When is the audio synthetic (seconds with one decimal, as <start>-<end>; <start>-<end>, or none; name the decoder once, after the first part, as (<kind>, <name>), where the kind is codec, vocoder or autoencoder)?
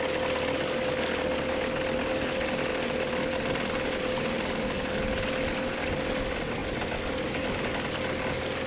none